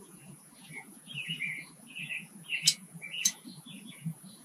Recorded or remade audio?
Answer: remade